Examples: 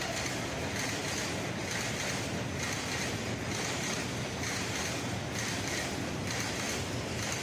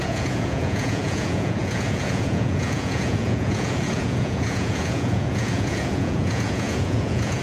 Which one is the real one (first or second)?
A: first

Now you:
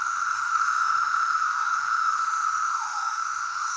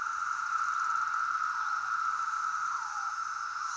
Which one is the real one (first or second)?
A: second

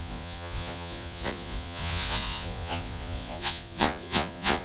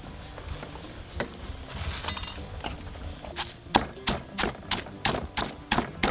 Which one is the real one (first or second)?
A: second